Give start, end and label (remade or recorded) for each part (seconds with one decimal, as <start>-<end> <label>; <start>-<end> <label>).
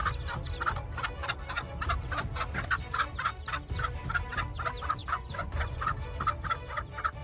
0.0-5.0 recorded; 5.0-5.9 remade; 5.9-7.2 recorded